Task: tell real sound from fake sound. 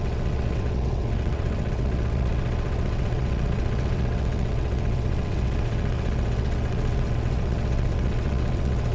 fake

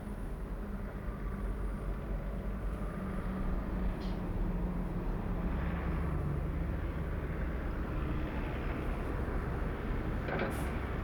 real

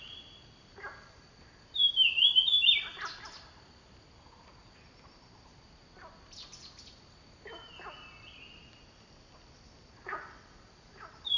real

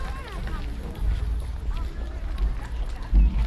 real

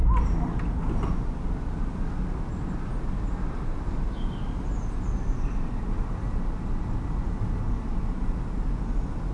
real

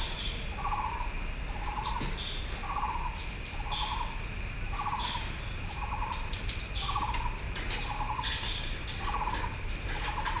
real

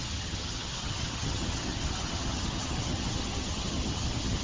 fake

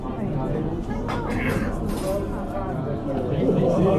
real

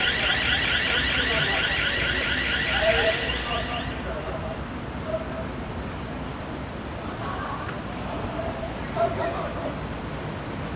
fake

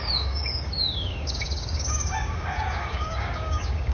fake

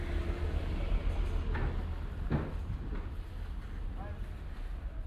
real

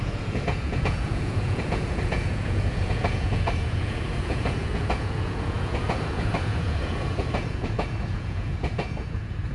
fake